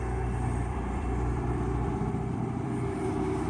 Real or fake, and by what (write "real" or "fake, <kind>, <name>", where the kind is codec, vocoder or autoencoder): fake, vocoder, BigVGAN v2